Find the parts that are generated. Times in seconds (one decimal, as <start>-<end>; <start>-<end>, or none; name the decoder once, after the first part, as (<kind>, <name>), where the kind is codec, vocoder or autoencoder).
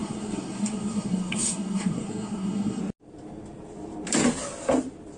0.0-2.8 (codec, SNAC)